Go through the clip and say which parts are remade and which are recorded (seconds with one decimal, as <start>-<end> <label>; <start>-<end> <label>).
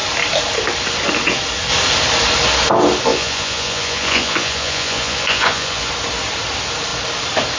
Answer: 0.0-3.1 recorded; 3.1-5.9 remade; 5.9-7.6 recorded